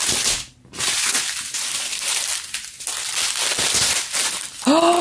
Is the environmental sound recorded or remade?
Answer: recorded